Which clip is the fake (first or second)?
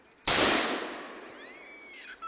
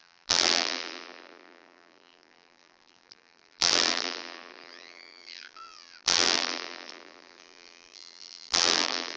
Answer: second